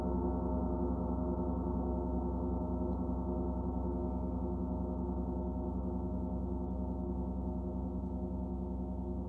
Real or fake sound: fake